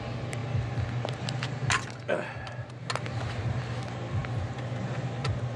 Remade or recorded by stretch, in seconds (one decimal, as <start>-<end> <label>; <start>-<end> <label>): 0.0-5.6 recorded